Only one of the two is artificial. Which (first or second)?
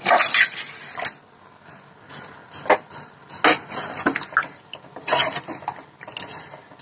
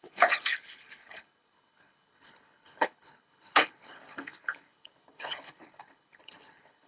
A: second